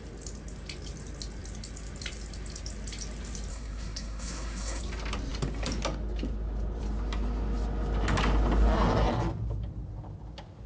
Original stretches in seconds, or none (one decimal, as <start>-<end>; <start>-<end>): 0.0-3.5; 4.8-10.7